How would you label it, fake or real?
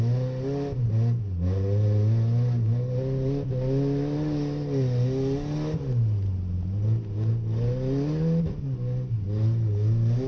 real